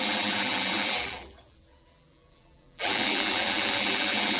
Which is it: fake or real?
fake